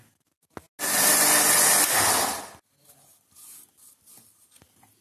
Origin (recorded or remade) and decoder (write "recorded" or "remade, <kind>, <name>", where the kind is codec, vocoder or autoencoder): recorded